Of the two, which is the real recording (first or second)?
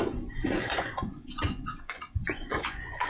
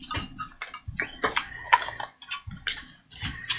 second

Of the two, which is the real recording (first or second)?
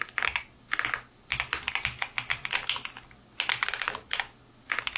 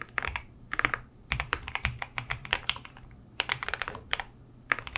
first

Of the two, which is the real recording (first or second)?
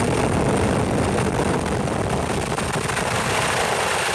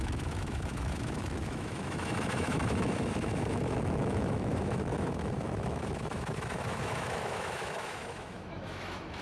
first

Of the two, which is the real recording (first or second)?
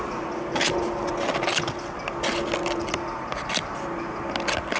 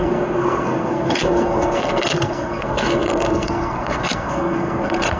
first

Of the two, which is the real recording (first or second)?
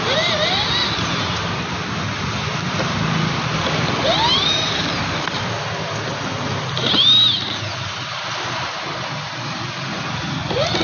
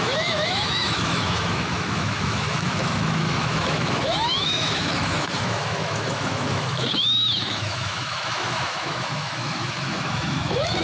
first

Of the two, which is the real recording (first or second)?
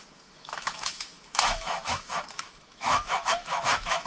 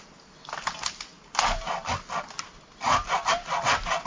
second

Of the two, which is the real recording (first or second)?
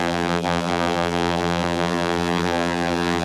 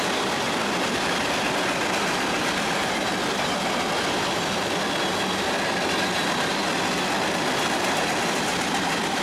second